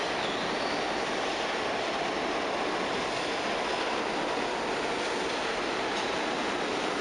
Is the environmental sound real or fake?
real